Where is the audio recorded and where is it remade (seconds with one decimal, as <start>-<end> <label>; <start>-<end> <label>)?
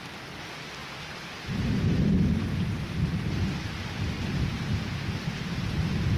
0.0-6.2 remade